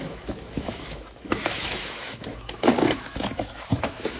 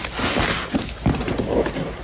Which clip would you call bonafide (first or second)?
second